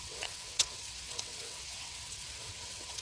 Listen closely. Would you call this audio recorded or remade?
remade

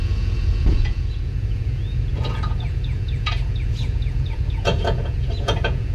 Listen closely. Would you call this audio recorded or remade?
remade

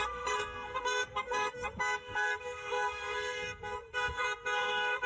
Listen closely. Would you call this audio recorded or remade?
remade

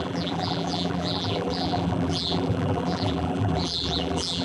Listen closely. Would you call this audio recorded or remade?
remade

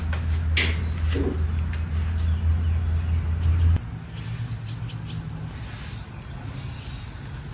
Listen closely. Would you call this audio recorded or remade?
recorded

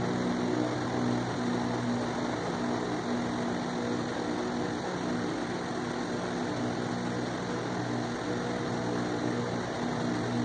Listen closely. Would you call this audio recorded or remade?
recorded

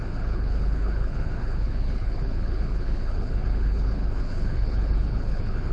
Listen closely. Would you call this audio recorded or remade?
remade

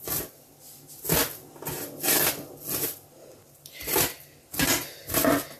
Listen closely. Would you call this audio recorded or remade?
recorded